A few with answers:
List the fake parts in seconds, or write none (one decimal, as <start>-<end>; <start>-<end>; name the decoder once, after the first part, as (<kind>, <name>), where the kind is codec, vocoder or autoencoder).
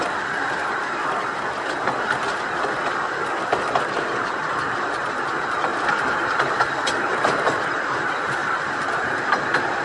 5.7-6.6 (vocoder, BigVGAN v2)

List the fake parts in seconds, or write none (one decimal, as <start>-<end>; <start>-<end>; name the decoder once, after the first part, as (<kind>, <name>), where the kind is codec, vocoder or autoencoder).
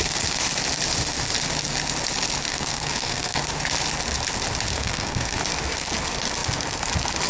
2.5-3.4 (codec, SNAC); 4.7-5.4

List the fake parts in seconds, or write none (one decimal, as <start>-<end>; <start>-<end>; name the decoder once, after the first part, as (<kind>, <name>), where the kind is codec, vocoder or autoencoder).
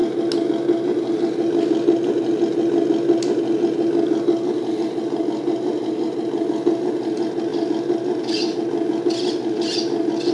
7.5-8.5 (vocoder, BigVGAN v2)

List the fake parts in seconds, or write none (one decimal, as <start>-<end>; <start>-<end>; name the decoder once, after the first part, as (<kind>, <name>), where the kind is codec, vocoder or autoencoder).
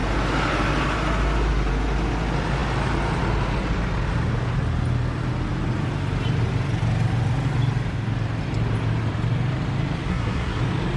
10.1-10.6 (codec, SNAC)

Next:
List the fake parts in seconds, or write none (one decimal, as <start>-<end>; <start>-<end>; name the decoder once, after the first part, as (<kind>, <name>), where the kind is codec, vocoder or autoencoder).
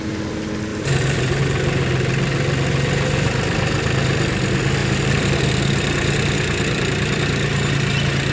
0.7-1.4 (vocoder, BigVGAN v2); 4.8-5.4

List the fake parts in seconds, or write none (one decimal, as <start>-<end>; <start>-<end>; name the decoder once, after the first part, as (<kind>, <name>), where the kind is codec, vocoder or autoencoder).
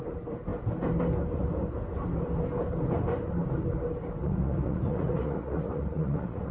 4.2-6.5 (vocoder, Vocos)